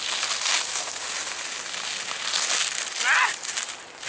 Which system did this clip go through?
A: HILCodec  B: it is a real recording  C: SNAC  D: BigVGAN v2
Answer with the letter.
B